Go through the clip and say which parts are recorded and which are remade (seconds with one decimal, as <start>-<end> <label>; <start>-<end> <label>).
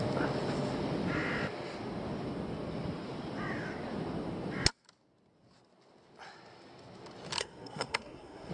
0.0-7.4 recorded; 7.4-8.5 remade